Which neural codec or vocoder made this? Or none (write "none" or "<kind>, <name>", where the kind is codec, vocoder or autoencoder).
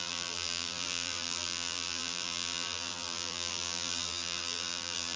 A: vocoder, BigVGAN v2